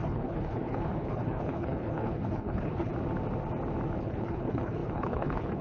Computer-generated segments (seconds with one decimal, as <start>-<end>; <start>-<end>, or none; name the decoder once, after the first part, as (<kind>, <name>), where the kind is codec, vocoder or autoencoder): 0.0-2.9 (codec, HILCodec); 4.0-5.6